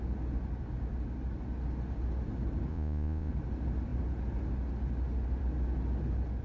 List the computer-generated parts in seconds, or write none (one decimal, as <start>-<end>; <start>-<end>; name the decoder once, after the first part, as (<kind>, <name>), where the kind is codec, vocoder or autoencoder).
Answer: 2.7-3.3 (vocoder, Vocos)